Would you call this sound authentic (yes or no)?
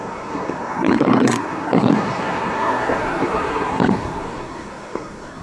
no